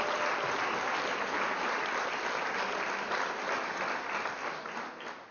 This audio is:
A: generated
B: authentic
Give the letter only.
B